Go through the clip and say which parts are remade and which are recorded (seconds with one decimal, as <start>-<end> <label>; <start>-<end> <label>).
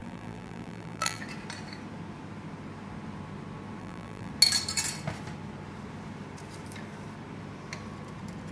0.0-1.2 remade; 1.2-3.8 recorded; 3.8-4.3 remade; 4.3-8.5 recorded